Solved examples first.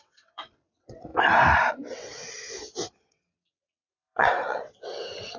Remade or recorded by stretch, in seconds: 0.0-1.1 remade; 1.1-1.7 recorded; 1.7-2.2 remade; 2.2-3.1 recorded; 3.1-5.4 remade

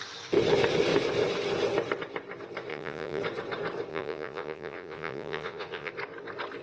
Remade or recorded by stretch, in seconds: 0.0-2.7 recorded; 2.7-3.2 remade; 3.2-3.9 recorded; 3.9-5.9 remade; 5.9-6.6 recorded

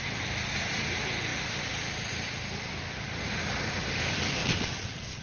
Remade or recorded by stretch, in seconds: 0.0-4.4 recorded; 4.4-5.2 remade

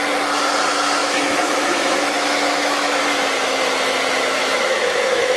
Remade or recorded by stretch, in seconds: 0.0-1.0 recorded; 1.0-3.0 remade; 3.0-4.4 recorded; 4.4-5.4 remade

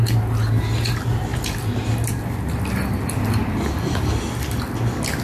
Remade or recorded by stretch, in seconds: 0.0-5.2 recorded

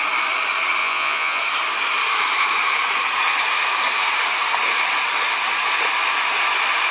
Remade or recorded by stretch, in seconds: 0.0-0.8 recorded; 0.8-1.4 remade; 1.4-6.9 recorded